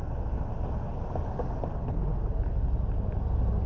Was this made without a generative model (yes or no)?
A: yes